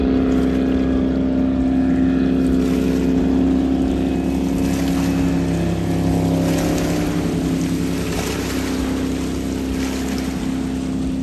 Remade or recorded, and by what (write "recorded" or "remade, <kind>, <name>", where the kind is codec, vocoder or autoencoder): recorded